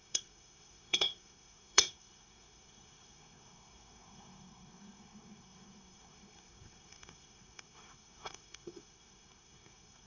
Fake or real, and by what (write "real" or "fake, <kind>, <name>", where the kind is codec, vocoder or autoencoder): fake, codec, SNAC